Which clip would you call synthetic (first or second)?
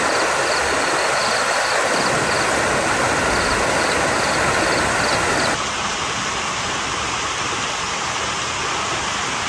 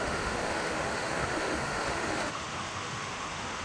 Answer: second